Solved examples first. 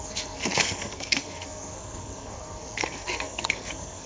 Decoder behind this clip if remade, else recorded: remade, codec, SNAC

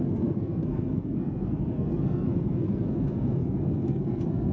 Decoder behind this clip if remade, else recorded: remade, codec, SNAC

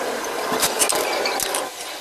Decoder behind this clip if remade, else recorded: recorded